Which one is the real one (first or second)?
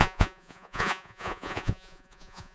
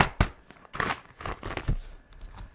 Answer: second